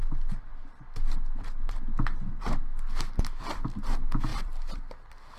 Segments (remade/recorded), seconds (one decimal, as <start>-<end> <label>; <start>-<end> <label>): 0.0-4.3 recorded; 4.3-4.8 remade; 4.8-5.4 recorded